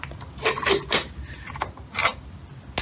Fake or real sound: real